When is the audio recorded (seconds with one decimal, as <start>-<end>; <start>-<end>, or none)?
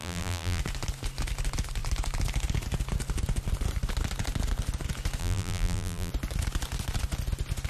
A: 0.6-5.2; 6.1-7.7